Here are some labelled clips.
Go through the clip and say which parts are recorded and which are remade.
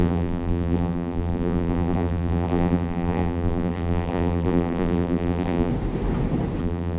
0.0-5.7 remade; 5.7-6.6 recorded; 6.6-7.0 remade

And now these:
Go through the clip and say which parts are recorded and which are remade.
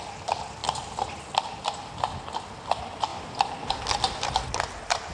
0.0-5.1 recorded